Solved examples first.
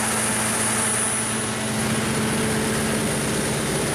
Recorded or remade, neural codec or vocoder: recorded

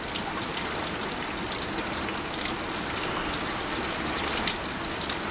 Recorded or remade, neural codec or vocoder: recorded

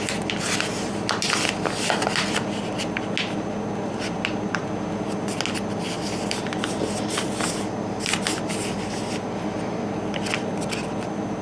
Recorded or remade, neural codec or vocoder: recorded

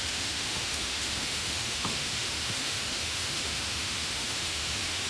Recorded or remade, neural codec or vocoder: remade, autoencoder, DAC-VAE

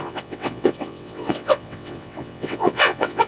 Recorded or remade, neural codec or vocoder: remade, vocoder, WaveNeXt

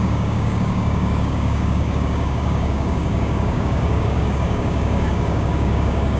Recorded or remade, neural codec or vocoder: remade, codec, DAC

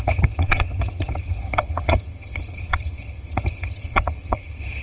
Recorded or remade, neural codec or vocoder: remade, vocoder, HiFi-GAN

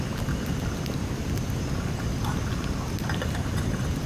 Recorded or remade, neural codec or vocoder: recorded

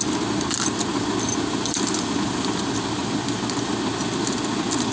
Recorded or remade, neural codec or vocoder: recorded